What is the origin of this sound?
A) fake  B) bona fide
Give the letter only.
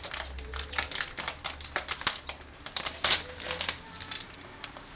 B